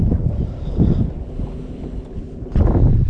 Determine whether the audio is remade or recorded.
recorded